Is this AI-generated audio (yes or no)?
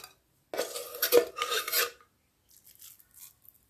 no